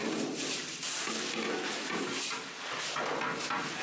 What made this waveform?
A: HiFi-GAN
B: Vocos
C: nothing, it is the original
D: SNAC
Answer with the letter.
C